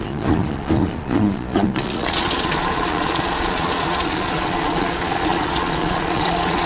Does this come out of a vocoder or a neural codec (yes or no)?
yes